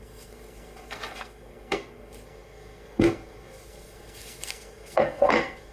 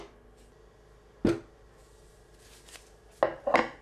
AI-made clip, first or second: first